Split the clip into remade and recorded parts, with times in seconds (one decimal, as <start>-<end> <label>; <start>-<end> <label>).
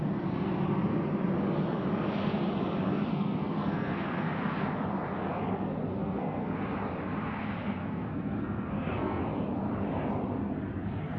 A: 0.0-3.1 recorded; 3.1-4.3 remade; 4.3-5.9 recorded; 5.9-6.5 remade; 6.5-7.8 recorded; 7.8-9.2 remade; 9.2-11.2 recorded